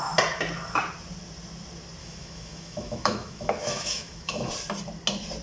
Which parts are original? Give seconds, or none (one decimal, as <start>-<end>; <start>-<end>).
0.0-2.0; 4.5-5.4

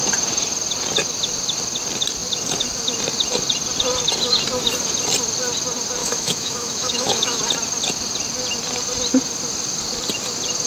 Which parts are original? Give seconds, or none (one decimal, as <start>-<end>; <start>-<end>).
0.0-6.0; 7.4-10.7

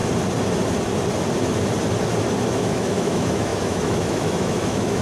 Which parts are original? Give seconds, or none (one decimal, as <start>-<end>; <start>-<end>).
0.0-2.4

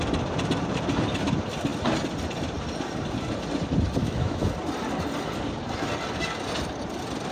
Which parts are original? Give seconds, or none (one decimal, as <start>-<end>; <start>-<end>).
0.0-4.0; 4.5-7.3

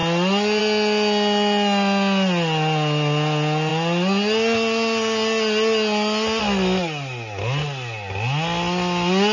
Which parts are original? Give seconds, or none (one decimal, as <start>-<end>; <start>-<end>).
0.0-9.3

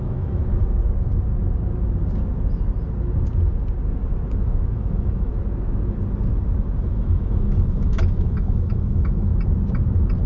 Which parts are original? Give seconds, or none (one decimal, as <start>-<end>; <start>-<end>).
0.4-4.4; 5.3-6.8; 9.3-10.3

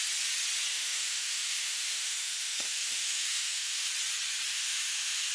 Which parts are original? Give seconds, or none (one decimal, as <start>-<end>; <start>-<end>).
0.0-0.7; 3.9-4.5

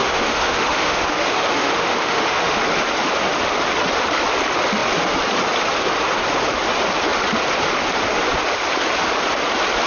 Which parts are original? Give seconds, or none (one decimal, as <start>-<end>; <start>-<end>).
2.6-9.9